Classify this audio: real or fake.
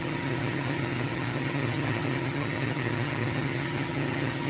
fake